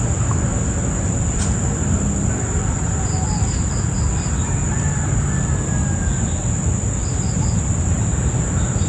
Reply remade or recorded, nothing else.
recorded